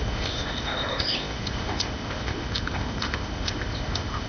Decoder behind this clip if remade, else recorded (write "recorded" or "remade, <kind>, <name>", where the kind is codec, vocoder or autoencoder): remade, codec, ZipCodec